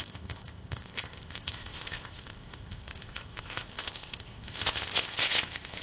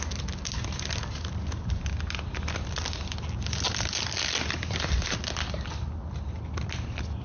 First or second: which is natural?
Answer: second